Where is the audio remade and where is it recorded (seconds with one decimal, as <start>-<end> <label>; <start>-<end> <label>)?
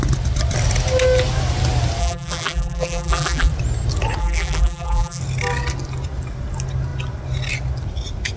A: 0.0-2.0 recorded; 2.0-3.5 remade; 3.5-4.2 recorded; 4.2-5.2 remade; 5.2-8.4 recorded